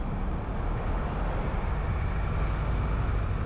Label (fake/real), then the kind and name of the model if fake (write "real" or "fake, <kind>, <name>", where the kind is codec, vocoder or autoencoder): real